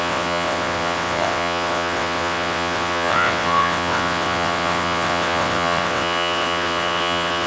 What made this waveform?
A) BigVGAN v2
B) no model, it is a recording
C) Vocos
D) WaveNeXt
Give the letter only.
D